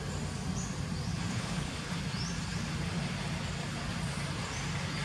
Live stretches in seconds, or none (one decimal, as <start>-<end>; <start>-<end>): 0.0-1.3; 2.0-5.0